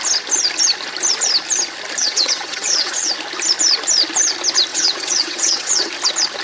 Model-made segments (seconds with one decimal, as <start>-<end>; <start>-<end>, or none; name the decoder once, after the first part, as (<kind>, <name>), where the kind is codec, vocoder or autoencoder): 2.0-3.1 (vocoder, WaveNeXt); 4.7-5.9